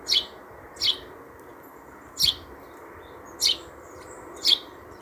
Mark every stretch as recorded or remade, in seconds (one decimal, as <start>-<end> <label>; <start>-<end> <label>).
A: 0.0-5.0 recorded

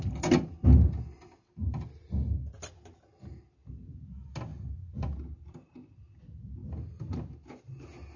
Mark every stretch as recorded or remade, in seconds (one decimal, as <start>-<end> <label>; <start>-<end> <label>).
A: 0.0-8.2 recorded

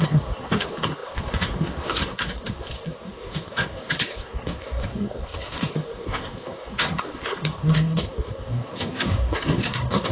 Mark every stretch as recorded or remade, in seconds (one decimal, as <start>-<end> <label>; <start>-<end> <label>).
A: 0.0-10.1 remade

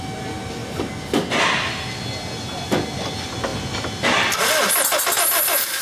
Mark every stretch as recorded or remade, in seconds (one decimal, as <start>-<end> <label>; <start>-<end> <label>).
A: 0.0-5.8 recorded